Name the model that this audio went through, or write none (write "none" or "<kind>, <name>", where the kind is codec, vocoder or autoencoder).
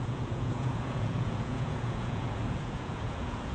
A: vocoder, Vocos